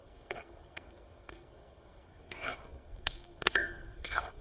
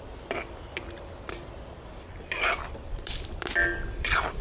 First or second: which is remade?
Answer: first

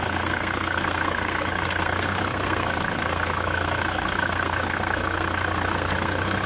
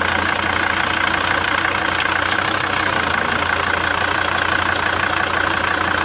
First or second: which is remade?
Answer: first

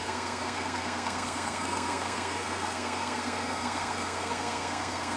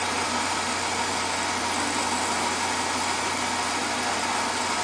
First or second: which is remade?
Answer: first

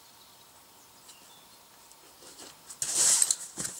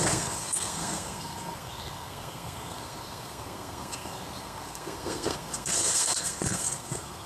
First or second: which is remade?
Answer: second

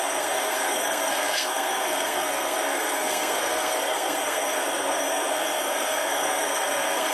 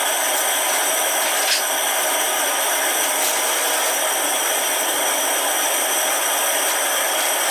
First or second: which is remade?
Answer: first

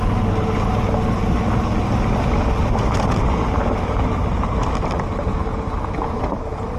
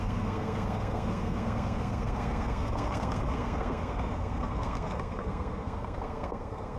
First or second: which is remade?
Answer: second